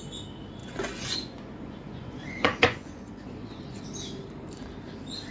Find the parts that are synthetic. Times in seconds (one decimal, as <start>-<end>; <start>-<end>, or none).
0.6-3.8